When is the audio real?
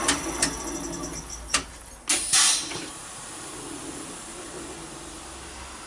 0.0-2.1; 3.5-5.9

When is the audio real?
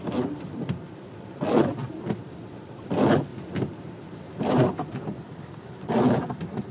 3.3-4.4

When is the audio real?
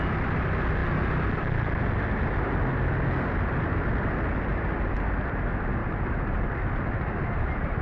0.0-5.8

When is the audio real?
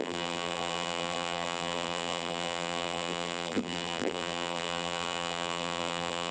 none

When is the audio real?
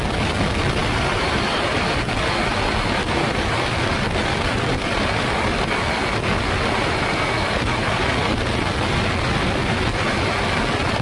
0.0-0.8; 1.9-11.0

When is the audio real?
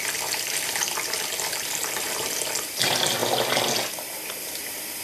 3.2-4.3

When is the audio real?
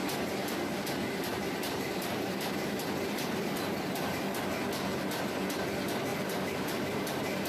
0.0-1.3; 4.4-6.1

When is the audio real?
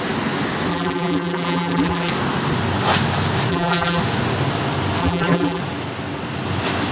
0.0-0.7; 2.1-3.5; 4.0-5.0; 5.6-6.9